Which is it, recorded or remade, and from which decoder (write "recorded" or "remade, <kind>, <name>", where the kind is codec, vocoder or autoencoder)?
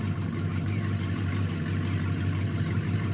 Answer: remade, vocoder, BigVGAN v2